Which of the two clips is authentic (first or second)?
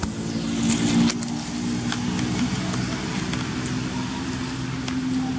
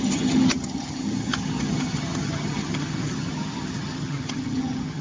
first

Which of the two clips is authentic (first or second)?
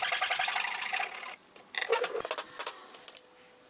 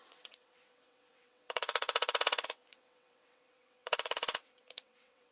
first